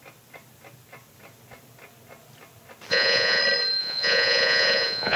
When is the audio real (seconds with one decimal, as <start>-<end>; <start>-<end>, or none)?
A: 0.0-2.9; 3.4-3.8